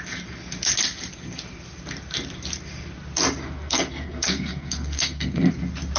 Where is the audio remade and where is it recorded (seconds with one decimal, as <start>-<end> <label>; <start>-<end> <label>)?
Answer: 0.0-3.4 recorded; 3.4-5.5 remade; 5.5-6.0 recorded

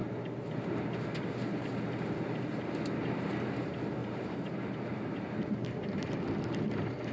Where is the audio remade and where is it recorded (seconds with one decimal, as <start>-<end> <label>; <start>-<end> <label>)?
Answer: 0.0-4.0 recorded; 4.0-5.2 remade; 5.2-7.1 recorded

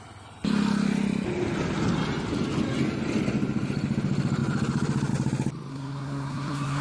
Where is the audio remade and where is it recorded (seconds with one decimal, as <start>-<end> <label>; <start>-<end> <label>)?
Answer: 0.0-5.7 recorded; 5.7-6.8 remade

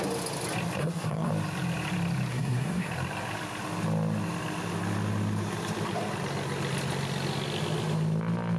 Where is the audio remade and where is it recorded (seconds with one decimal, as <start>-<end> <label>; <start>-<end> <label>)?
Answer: 0.0-0.8 recorded; 0.8-1.3 remade; 1.3-2.3 recorded; 2.3-2.9 remade; 2.9-8.6 recorded

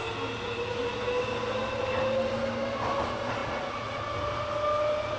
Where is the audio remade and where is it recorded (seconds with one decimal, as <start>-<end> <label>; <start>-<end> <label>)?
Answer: 0.0-3.4 recorded; 3.4-4.0 remade; 4.0-5.2 recorded

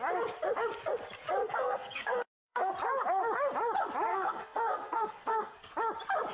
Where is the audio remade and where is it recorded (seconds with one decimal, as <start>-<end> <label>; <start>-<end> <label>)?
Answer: 0.0-1.4 recorded; 1.4-2.7 remade; 2.7-4.1 recorded; 4.1-5.7 remade; 5.7-6.3 recorded

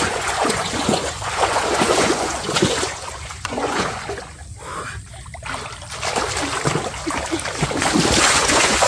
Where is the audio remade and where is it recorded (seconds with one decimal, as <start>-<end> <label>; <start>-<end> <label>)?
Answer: 0.0-4.4 remade; 4.4-8.2 recorded; 8.2-8.9 remade

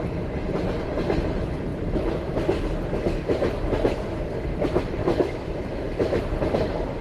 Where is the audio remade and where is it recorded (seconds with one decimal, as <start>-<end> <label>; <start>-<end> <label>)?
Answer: 0.0-5.0 recorded; 5.0-6.2 remade; 6.2-7.0 recorded